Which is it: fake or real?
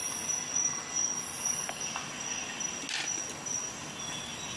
real